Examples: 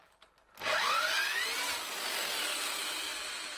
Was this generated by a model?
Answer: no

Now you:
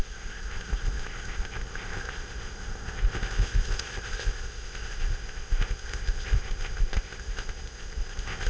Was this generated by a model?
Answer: yes